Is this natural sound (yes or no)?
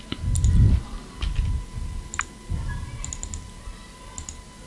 yes